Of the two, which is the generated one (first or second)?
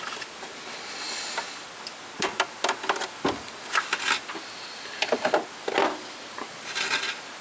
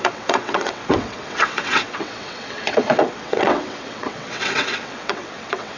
second